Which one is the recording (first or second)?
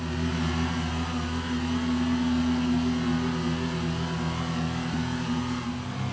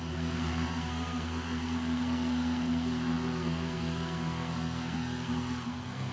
first